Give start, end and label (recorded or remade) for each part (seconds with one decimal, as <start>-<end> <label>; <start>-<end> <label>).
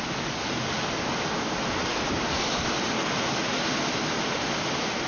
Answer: 0.0-5.1 recorded